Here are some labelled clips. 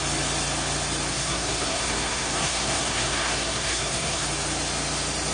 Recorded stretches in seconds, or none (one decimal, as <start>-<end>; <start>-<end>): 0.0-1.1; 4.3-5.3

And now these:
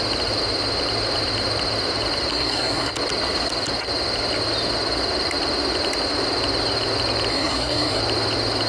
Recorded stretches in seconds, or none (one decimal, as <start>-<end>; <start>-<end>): 0.0-2.3; 2.9-7.3; 8.0-8.7

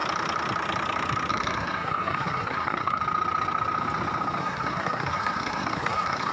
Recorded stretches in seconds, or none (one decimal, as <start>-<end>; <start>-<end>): 0.0-1.3; 3.0-4.4